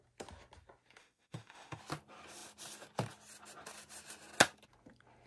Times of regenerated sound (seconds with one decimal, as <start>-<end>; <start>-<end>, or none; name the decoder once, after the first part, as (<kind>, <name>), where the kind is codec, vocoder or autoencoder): 1.0-1.8 (autoencoder, DAC-VAE)